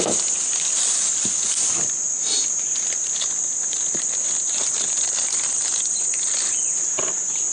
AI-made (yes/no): no